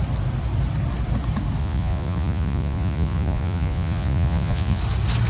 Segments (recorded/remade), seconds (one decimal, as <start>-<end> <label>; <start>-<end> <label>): 0.0-1.6 recorded; 1.6-4.8 remade; 4.8-5.3 recorded